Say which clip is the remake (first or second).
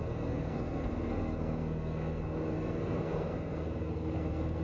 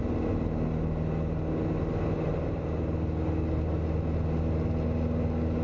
first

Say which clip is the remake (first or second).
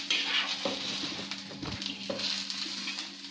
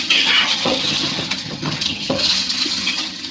second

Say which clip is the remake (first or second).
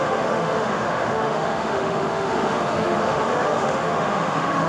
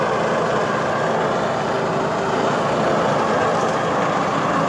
first